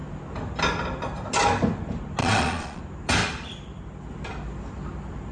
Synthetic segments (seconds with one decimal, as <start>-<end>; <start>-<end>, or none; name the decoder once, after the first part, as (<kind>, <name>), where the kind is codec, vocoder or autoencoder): 2.2-2.8 (vocoder, Vocos)